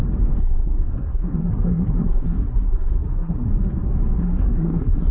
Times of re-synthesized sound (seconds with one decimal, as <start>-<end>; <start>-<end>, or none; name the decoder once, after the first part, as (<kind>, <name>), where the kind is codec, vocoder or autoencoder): 0.4-3.5 (codec, SNAC); 4.2-5.1